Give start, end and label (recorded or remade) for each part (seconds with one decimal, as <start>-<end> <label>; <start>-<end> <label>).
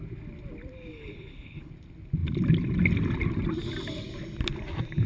0.0-0.9 recorded; 0.9-1.7 remade; 1.7-5.1 recorded